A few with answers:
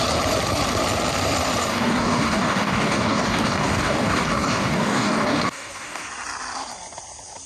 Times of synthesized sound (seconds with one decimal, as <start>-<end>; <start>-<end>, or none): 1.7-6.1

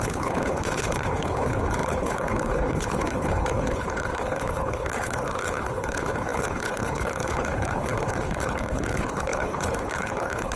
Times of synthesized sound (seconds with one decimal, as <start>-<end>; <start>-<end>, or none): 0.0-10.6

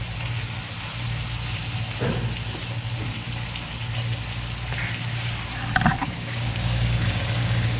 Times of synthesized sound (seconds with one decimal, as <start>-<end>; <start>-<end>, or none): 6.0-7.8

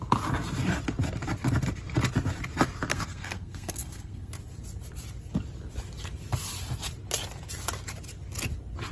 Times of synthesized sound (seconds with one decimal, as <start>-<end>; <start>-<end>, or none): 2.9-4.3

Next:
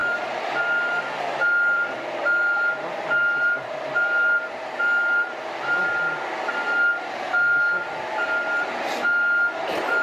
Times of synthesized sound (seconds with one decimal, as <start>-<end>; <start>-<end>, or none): 0.0-2.6; 3.2-5.4